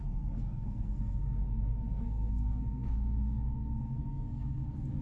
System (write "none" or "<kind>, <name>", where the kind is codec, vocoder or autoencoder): codec, SNAC